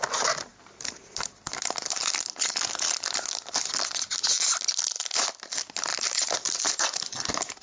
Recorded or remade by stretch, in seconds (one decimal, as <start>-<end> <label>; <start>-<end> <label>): 0.0-0.5 recorded; 0.5-1.4 remade; 1.4-5.9 recorded; 5.9-6.7 remade; 6.7-7.6 recorded